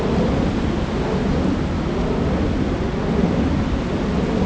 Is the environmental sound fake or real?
real